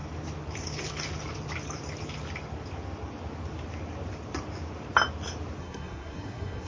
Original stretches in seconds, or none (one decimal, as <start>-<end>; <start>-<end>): 0.0-5.6